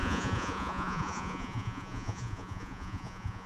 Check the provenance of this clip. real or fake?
fake